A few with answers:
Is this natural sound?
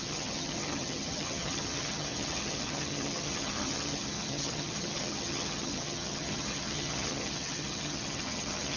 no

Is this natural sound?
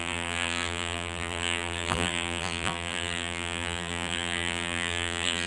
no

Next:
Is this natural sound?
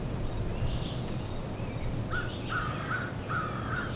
yes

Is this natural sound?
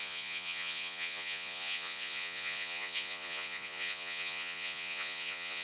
no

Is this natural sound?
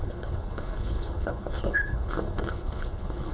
no